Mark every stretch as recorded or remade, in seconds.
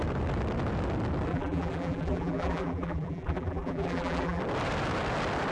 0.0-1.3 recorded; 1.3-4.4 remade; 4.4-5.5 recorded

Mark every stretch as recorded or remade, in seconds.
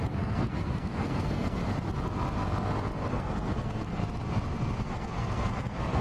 0.0-1.6 remade; 1.6-3.1 recorded; 3.1-4.0 remade; 4.0-4.8 recorded; 4.8-6.0 remade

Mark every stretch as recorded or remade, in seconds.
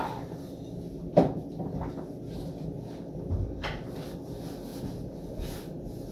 0.0-6.1 recorded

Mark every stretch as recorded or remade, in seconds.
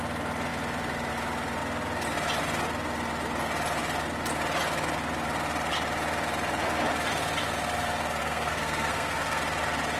0.0-8.2 recorded; 8.2-9.4 remade; 9.4-10.0 recorded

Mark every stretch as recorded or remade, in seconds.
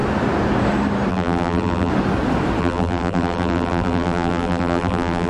0.0-1.1 recorded; 1.1-1.9 remade; 1.9-2.6 recorded; 2.6-5.3 remade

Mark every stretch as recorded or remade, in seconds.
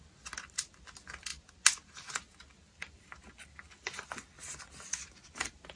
0.0-5.8 recorded